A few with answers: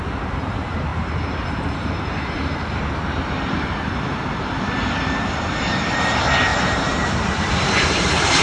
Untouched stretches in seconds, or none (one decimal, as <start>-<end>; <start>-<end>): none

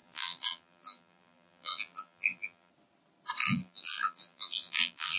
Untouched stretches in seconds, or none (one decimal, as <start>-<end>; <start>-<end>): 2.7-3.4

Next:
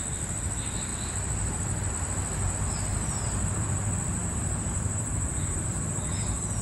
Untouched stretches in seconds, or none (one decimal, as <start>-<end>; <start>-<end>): 0.0-2.9; 3.7-4.2

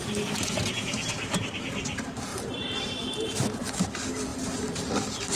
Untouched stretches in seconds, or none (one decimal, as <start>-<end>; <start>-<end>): 0.0-2.3; 3.3-4.3; 4.9-5.4

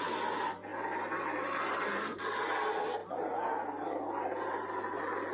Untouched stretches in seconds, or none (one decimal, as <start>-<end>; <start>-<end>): 0.0-5.3